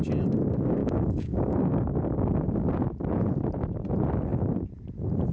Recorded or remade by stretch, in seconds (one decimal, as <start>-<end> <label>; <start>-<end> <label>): 0.0-0.8 recorded; 0.8-2.4 remade; 2.4-5.3 recorded